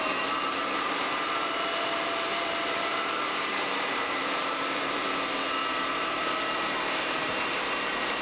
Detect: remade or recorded remade